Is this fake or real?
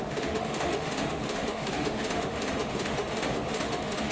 fake